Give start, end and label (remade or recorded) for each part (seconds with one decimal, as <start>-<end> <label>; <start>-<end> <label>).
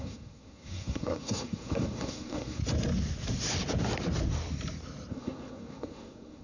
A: 0.0-2.6 remade; 2.6-5.1 recorded; 5.1-6.4 remade